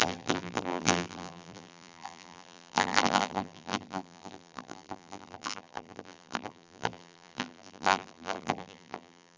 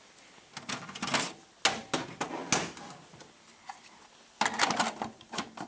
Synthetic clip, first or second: first